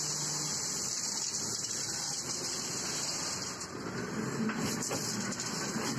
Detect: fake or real real